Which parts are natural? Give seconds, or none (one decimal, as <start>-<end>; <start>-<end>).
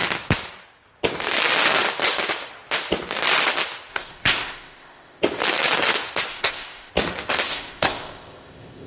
0.0-3.9; 5.2-6.3; 6.9-7.5